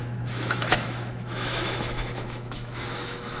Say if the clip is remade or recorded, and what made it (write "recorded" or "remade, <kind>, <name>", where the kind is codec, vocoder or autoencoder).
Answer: remade, autoencoder, DAC-VAE